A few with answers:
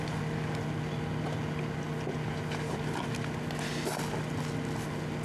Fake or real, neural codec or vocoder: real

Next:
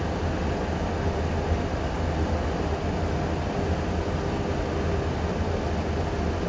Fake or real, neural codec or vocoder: real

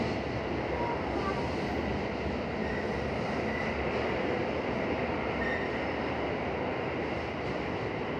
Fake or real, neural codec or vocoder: real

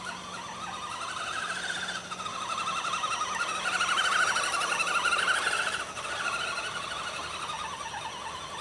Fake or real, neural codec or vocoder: real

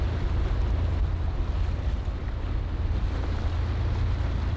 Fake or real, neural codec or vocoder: real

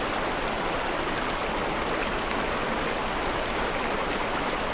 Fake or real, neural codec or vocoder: real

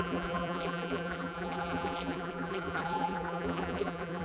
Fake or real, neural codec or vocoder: fake, vocoder, BigVGAN v2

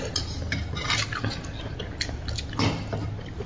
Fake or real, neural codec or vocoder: real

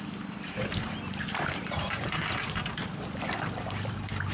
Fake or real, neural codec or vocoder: fake, vocoder, BigVGAN v2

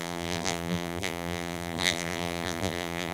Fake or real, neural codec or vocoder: fake, vocoder, BigVGAN v2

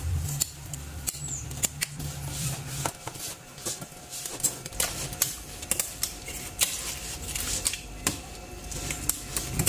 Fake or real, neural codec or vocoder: fake, vocoder, BigVGAN v2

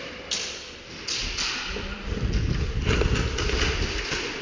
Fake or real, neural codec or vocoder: real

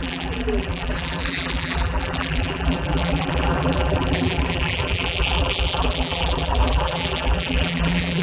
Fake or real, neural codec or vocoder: fake, vocoder, BigVGAN v2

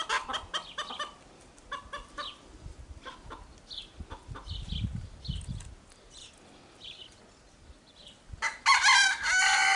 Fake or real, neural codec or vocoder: real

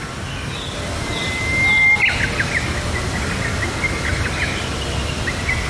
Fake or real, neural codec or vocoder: real